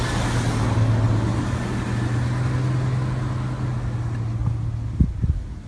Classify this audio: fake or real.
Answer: real